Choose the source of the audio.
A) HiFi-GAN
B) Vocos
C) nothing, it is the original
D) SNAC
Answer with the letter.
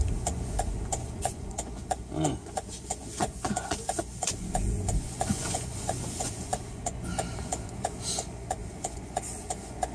B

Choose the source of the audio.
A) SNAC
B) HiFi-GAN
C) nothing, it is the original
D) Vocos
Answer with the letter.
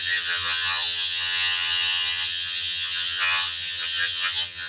B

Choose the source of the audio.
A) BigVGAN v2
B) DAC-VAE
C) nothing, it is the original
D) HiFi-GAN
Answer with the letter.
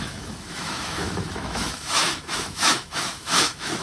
B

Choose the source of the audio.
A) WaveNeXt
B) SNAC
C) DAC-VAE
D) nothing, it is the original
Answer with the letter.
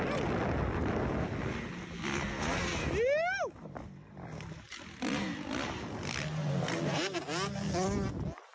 D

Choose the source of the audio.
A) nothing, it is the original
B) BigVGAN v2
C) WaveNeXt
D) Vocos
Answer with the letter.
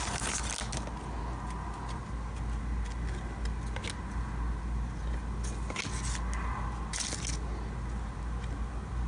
A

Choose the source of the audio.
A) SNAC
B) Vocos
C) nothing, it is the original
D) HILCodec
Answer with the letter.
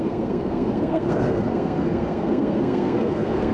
A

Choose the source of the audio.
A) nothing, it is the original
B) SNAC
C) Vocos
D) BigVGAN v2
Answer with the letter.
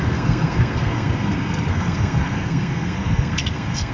B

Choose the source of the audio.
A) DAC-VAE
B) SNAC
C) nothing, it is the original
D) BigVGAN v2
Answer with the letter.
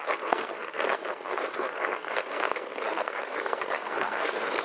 B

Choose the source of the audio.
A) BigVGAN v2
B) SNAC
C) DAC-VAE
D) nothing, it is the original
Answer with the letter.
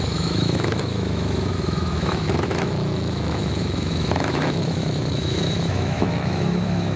C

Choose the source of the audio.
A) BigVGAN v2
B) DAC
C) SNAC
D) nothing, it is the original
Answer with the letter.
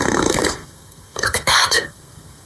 C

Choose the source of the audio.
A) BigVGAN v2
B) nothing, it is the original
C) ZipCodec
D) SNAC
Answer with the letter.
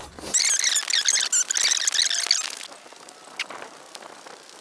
B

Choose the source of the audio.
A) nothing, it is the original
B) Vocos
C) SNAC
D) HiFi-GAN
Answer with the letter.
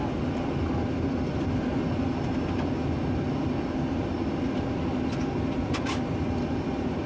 A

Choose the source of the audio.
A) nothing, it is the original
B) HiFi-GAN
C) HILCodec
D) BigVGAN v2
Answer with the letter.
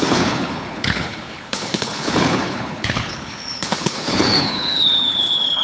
C